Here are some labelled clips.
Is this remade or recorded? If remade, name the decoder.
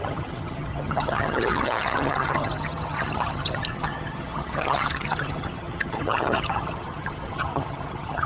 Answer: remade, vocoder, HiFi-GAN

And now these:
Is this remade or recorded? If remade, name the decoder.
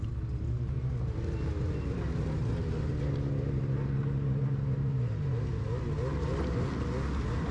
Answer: recorded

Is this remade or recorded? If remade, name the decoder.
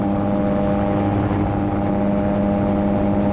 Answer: recorded